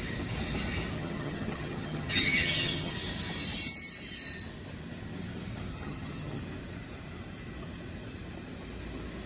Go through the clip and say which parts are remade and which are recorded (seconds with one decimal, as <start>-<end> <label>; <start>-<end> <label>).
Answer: 0.0-1.0 recorded; 1.0-2.9 remade; 2.9-5.7 recorded; 5.7-6.4 remade; 6.4-9.3 recorded